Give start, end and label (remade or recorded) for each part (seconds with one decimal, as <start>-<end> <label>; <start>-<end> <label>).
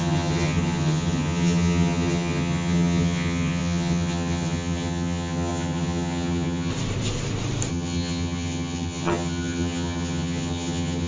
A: 0.0-6.7 remade; 6.7-7.7 recorded; 7.7-11.1 remade